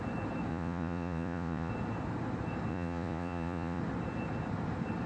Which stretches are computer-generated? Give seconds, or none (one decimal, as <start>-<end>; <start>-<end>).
0.5-1.7; 2.7-3.8